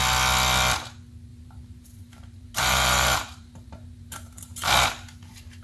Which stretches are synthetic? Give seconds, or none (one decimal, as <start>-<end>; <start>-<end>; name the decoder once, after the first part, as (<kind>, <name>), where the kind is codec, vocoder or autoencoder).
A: 1.3-4.7 (vocoder, BigVGAN v2)